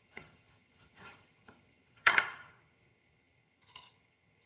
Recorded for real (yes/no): no